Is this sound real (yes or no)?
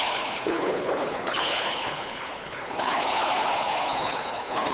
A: no